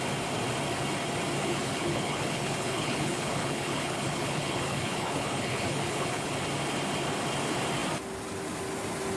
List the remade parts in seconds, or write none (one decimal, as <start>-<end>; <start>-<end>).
1.4-6.3